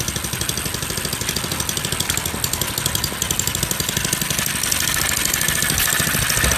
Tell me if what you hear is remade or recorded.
recorded